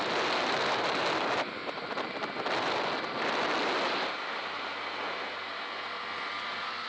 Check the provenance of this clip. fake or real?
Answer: real